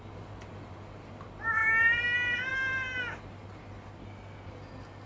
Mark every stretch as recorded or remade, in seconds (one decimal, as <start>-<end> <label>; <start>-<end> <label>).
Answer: 0.0-4.0 recorded; 4.0-4.5 remade; 4.5-5.1 recorded

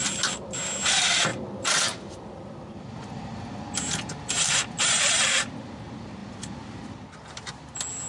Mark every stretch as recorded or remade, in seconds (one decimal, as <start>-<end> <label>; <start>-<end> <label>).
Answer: 0.0-1.3 recorded; 1.3-4.7 remade; 4.7-6.2 recorded; 6.2-7.5 remade; 7.5-8.1 recorded

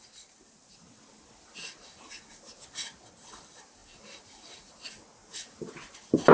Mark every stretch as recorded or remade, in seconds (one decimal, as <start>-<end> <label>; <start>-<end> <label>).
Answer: 0.0-6.3 recorded